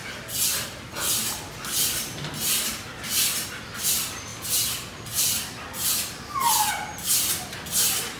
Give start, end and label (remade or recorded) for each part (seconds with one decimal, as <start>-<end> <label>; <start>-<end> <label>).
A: 0.0-8.2 recorded